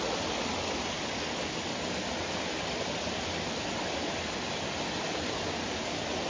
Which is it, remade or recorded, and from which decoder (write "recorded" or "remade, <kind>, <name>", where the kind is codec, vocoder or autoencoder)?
recorded